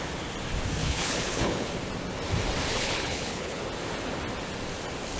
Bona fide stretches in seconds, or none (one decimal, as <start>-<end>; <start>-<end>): 0.0-0.8; 1.7-2.7; 3.6-5.2